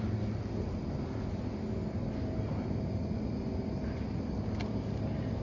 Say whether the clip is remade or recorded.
recorded